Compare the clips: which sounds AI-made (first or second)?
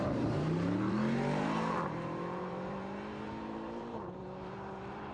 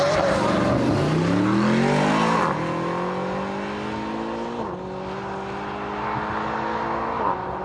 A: first